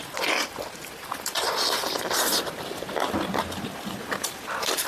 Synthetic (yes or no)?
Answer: yes